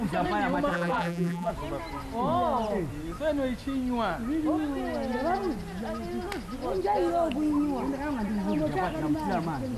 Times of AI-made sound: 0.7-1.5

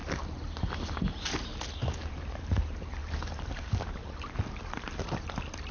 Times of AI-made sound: 1.7-5.7